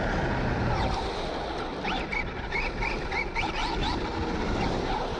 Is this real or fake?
real